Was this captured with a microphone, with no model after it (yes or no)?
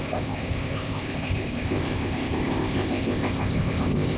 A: no